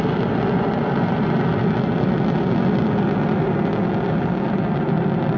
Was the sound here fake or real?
real